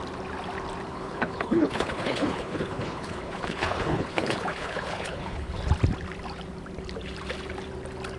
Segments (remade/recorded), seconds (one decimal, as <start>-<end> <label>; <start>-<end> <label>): 0.0-0.9 recorded; 0.9-5.5 remade; 5.5-8.2 recorded